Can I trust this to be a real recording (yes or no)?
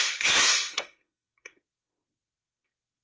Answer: no